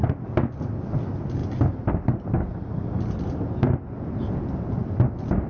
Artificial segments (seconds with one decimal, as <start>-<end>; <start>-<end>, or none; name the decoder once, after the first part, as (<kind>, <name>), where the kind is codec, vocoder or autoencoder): none